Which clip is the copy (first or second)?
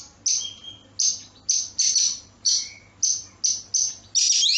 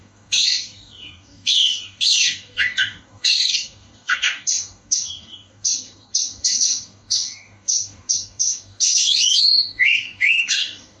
second